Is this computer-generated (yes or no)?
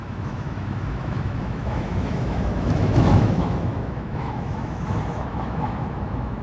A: yes